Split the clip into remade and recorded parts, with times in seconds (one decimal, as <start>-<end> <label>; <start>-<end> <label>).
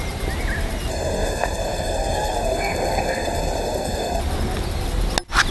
0.0-0.9 recorded; 0.9-4.2 remade; 4.2-5.5 recorded